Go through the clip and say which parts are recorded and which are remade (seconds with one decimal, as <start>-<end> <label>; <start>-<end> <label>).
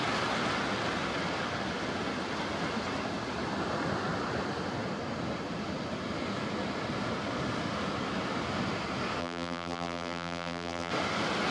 0.0-9.2 recorded; 9.2-10.9 remade; 10.9-11.5 recorded